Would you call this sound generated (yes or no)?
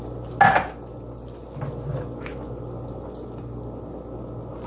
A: no